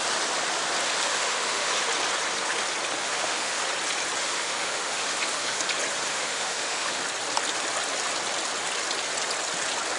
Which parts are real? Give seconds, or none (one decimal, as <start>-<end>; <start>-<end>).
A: 0.0-1.1; 1.8-3.0; 3.6-4.2; 5.6-6.1; 7.0-10.0